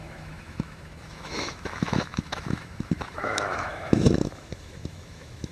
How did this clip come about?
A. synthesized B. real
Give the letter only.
A